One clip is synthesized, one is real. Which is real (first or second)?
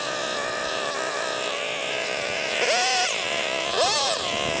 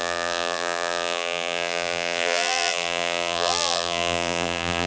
first